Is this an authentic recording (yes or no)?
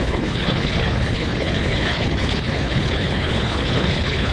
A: no